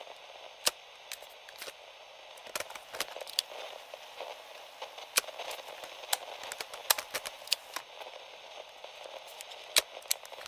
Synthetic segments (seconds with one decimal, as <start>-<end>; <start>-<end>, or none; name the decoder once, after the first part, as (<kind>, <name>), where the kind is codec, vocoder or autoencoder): none